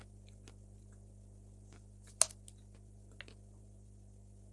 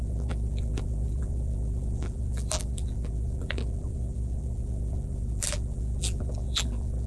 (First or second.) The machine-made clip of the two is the second